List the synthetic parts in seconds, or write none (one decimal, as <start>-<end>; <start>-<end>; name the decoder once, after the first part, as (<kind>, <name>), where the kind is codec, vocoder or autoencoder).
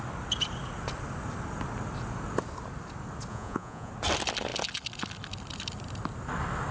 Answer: 3.3-3.9 (vocoder, Vocos)